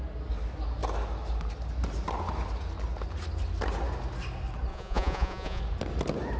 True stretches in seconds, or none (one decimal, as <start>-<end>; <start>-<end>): 0.0-4.7; 5.6-6.4